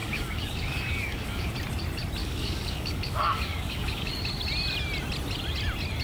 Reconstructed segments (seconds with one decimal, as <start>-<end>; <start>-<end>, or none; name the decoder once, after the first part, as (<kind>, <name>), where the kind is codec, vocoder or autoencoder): 0.0-1.5 (codec, DAC); 2.2-4.1